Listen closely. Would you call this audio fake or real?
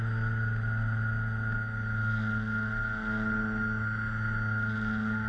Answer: real